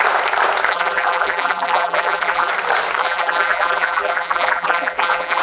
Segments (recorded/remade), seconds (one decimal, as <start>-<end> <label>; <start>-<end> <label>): 0.0-0.7 recorded; 0.7-2.5 remade; 2.5-3.0 recorded; 3.0-5.4 remade